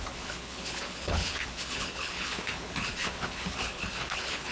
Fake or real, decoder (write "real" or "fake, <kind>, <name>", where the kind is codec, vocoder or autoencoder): fake, codec, HILCodec